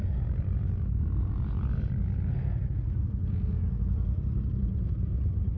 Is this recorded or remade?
recorded